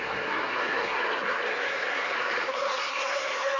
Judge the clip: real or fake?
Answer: fake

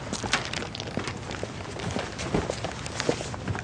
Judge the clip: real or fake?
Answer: real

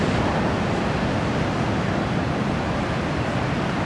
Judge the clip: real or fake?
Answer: real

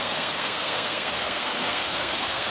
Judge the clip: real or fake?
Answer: fake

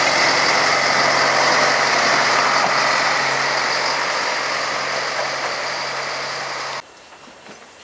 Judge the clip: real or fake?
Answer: real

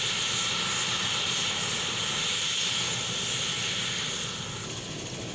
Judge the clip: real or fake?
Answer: real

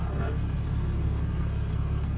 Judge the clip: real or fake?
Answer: fake